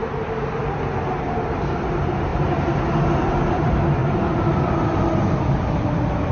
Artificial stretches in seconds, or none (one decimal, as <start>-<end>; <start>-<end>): none